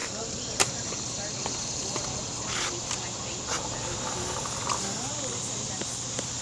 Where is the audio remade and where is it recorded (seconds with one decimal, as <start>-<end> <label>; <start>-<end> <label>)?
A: 0.0-2.4 remade; 2.4-6.4 recorded

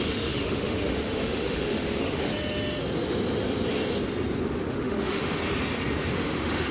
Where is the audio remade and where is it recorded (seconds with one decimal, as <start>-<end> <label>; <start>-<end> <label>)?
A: 0.0-2.3 remade; 2.3-4.7 recorded; 4.7-5.4 remade; 5.4-6.1 recorded; 6.1-6.7 remade

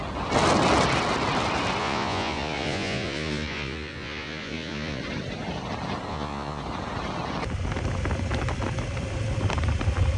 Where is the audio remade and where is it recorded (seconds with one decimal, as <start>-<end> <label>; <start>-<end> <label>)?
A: 0.0-1.8 recorded; 1.8-5.0 remade; 5.0-6.1 recorded; 6.1-6.6 remade; 6.6-10.2 recorded

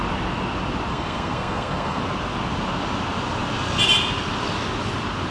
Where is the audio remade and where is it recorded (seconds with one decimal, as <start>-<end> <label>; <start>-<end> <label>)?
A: 0.0-0.9 recorded; 0.9-2.0 remade; 2.0-5.3 recorded

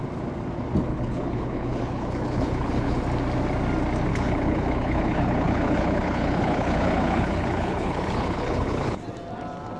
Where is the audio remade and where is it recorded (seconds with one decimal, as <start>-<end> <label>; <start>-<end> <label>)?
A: 0.0-0.9 recorded; 0.9-3.0 remade; 3.0-4.1 recorded; 4.1-9.0 remade; 9.0-9.8 recorded

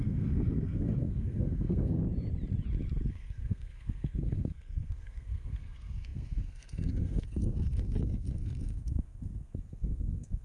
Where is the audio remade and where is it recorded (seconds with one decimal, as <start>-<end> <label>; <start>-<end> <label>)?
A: 0.0-2.0 remade; 2.0-3.1 recorded; 3.1-10.4 remade